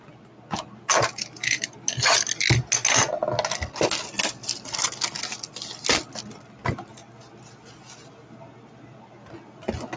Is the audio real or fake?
real